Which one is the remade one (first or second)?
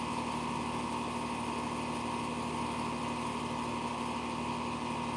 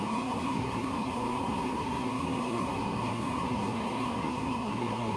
second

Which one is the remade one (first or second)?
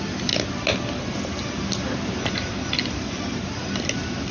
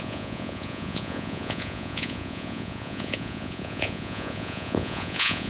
second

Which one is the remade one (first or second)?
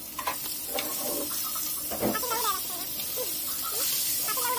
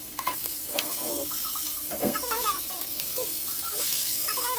second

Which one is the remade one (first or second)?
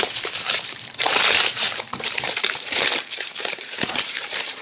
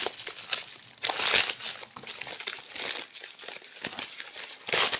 first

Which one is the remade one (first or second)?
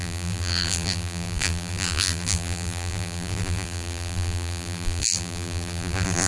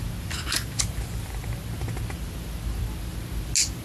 first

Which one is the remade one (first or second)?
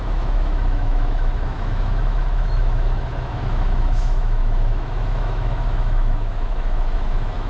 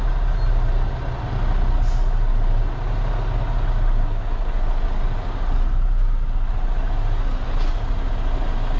first